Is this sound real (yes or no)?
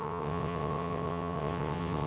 no